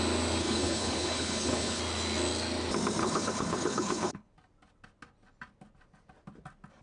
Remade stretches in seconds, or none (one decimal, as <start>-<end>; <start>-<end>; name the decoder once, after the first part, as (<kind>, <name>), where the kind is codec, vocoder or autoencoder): 0.4-1.8 (codec, HILCodec); 3.0-4.3